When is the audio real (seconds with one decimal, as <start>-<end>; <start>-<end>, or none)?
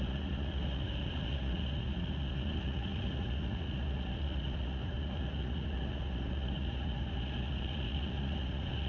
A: none